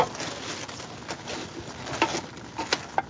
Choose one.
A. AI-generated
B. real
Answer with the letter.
B